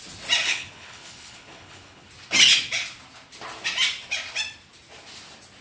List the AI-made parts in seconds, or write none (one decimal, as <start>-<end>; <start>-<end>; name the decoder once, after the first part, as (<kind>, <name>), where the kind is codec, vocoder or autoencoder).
0.5-2.1 (codec, HILCodec)